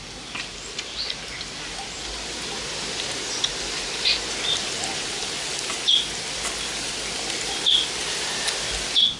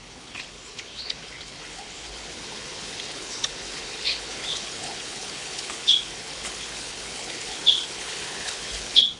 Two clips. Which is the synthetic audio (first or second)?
second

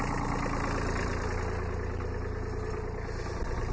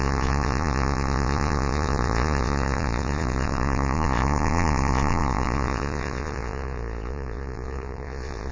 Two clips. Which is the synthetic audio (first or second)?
second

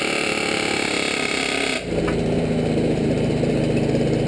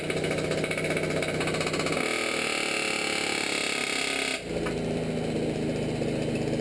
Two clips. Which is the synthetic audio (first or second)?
first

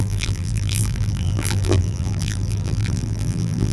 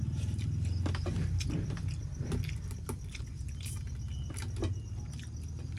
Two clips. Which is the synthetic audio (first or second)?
first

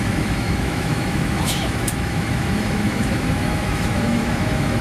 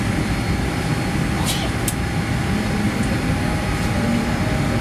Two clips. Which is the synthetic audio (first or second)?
first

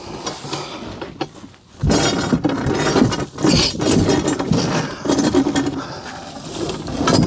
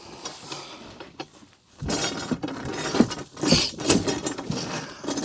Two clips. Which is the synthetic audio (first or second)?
second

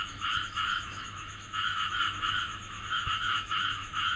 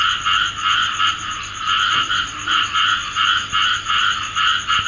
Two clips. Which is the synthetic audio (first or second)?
first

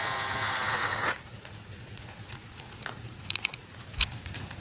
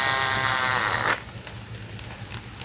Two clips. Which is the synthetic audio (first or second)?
first